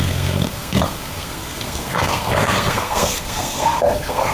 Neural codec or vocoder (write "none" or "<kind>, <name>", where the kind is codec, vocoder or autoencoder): codec, SNAC